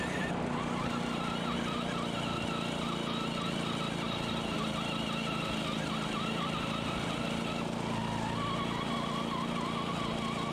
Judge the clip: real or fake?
real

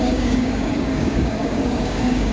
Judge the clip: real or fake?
fake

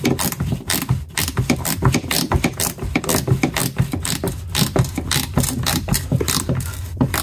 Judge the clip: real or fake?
real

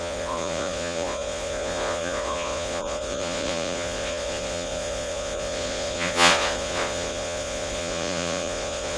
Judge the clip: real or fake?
fake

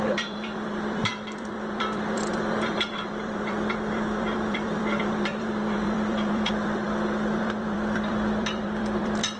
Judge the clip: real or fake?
fake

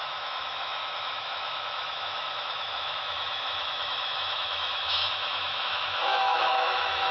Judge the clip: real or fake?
fake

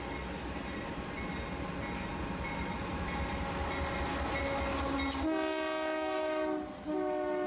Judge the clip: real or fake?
real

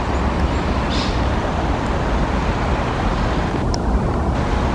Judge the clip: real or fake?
real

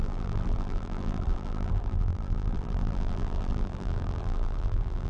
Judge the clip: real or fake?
fake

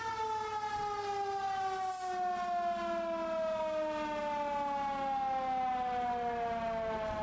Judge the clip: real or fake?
real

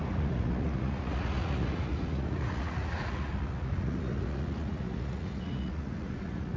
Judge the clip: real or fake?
fake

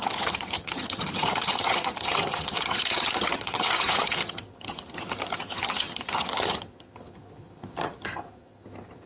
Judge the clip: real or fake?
fake